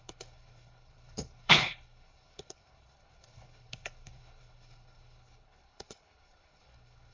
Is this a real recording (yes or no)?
no